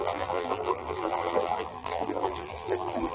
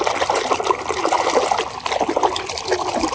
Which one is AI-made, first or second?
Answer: first